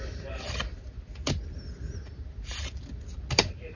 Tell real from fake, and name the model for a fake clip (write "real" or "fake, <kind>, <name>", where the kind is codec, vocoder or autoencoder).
real